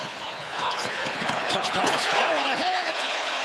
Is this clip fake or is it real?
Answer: fake